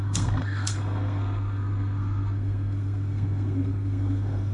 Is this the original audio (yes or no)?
no